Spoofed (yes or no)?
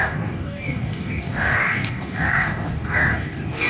yes